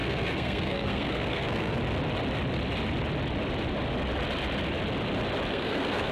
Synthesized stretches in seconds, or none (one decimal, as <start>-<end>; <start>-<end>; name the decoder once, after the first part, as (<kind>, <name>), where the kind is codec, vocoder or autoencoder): 0.0-1.8 (codec, SNAC); 5.5-6.1